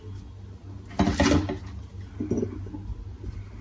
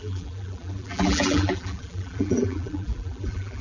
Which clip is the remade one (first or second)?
second